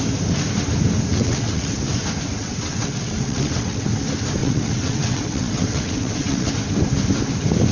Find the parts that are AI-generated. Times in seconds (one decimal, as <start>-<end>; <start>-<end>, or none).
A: 1.1-1.7; 2.4-3.9; 4.4-6.5

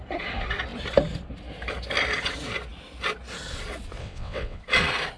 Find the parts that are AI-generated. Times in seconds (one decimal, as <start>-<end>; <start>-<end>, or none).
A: 4.0-4.6